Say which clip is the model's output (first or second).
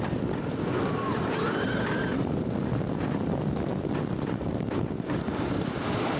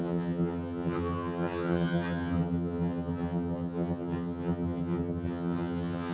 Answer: second